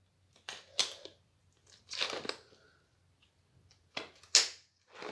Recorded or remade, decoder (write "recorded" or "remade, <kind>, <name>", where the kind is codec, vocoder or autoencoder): recorded